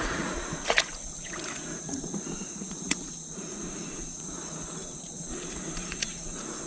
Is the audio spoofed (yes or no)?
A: yes